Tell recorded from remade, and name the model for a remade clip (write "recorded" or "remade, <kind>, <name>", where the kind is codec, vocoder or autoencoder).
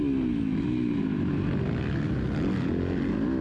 recorded